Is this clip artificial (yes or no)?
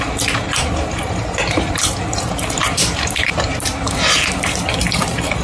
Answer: yes